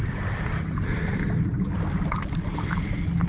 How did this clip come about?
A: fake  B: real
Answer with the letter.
B